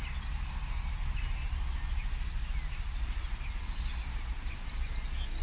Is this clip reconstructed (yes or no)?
no